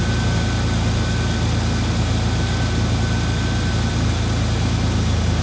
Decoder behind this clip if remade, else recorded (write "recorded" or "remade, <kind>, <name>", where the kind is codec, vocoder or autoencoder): recorded